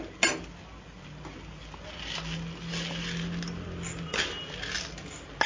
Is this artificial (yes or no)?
no